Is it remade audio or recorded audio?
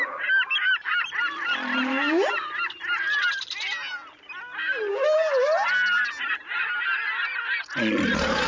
recorded